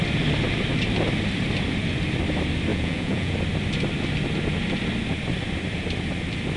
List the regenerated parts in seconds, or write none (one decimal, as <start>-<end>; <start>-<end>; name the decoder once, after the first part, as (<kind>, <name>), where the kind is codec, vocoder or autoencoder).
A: 2.7-3.3 (vocoder, Vocos)